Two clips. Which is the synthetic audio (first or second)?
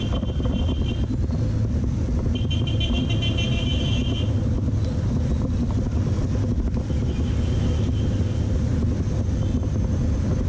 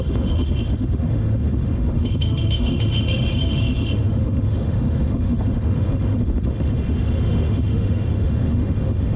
second